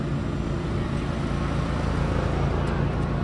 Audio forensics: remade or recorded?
recorded